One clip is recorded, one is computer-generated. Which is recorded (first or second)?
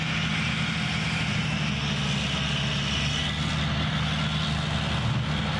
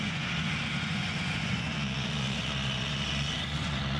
first